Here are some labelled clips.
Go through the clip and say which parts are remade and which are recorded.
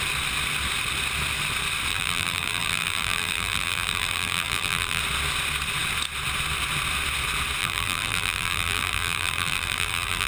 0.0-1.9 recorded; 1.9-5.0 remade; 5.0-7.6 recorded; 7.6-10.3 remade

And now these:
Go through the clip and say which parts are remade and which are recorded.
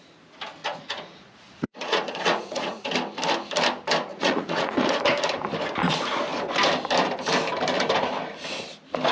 0.0-0.6 recorded; 0.6-2.9 remade; 2.9-4.1 recorded; 4.1-5.0 remade; 5.0-9.1 recorded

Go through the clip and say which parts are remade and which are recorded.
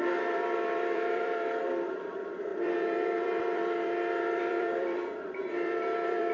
0.0-6.3 remade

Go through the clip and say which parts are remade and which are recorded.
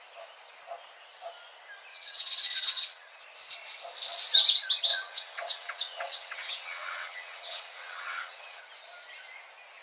0.0-1.9 recorded; 1.9-3.2 remade; 3.2-4.9 recorded; 4.9-8.6 remade; 8.6-9.8 recorded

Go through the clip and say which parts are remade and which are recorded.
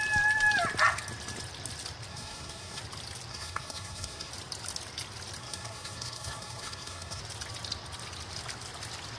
0.0-2.1 recorded; 2.1-2.8 remade; 2.8-3.3 recorded; 3.3-4.3 remade; 4.3-5.4 recorded; 5.4-7.2 remade; 7.2-9.2 recorded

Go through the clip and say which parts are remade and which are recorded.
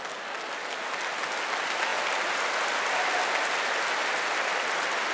0.0-5.1 recorded